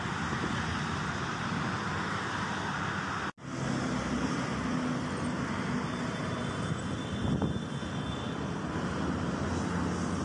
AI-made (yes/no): no